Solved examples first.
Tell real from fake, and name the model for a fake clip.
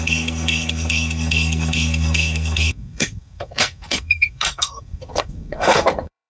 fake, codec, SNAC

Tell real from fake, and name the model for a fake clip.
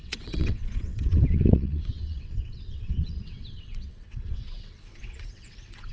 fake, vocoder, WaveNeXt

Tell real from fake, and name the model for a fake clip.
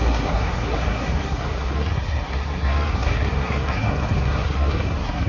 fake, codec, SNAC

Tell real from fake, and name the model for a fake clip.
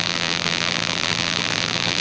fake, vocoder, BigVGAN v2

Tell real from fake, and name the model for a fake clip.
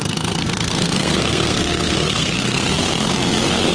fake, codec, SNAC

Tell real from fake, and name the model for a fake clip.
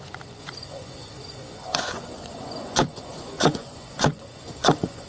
fake, vocoder, Vocos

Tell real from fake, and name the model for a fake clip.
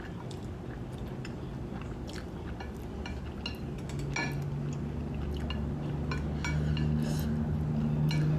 real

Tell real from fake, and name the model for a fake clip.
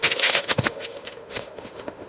fake, autoencoder, DAC-VAE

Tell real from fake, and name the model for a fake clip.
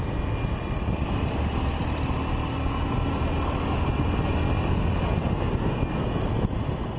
real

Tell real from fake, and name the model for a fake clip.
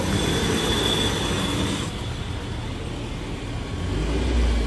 real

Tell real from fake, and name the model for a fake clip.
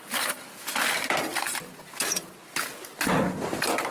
real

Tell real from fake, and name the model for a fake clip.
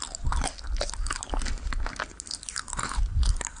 real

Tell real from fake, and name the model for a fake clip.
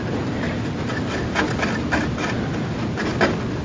real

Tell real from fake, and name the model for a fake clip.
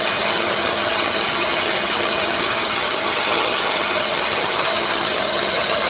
fake, vocoder, HiFi-GAN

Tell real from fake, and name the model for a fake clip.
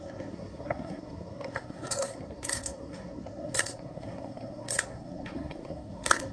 fake, codec, SNAC